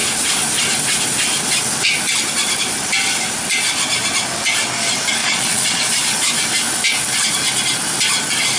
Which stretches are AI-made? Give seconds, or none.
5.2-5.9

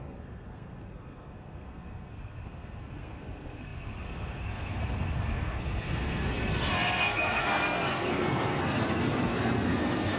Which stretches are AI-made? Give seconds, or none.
0.0-10.2

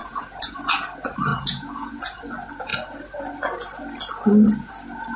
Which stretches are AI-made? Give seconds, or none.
0.0-0.7; 1.3-2.0